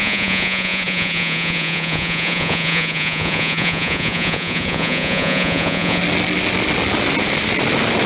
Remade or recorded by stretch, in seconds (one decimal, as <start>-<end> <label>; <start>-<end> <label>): 0.0-6.0 remade; 6.0-8.1 recorded